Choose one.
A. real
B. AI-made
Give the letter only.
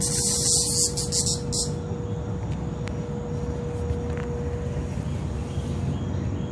A